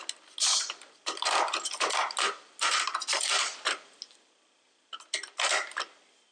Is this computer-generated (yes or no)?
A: no